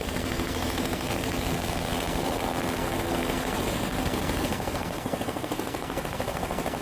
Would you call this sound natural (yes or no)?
no